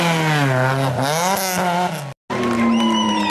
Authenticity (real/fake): real